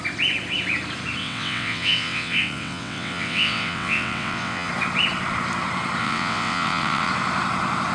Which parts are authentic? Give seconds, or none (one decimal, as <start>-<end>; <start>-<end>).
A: 0.0-1.2; 4.7-6.0; 7.1-7.9